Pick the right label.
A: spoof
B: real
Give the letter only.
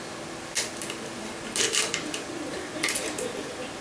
B